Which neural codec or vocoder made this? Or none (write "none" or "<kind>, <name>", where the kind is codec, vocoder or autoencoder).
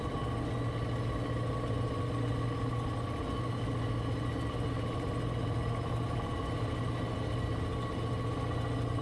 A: none